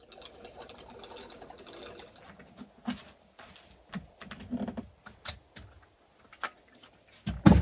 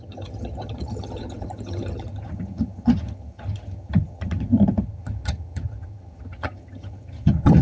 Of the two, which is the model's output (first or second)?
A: second